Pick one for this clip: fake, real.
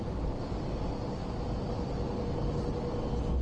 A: real